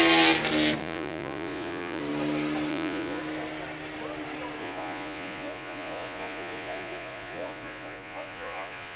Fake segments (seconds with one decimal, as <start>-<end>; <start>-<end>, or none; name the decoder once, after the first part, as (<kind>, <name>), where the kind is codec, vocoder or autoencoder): 0.8-2.0 (vocoder, Vocos); 2.7-3.2; 4.6-9.0